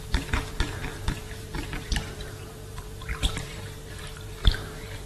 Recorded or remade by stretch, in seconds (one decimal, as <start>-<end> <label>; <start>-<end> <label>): 0.0-5.1 remade